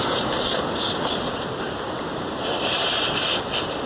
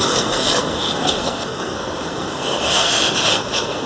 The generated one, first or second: second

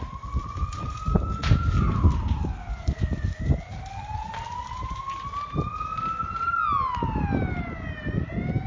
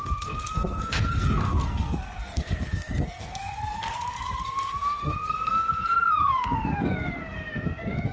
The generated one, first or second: second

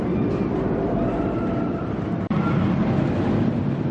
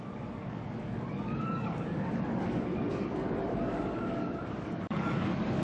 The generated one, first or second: second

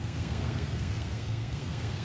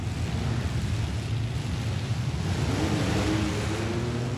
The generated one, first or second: first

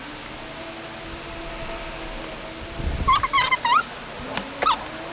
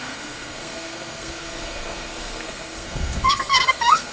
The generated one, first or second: second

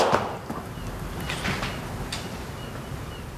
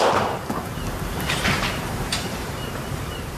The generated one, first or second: second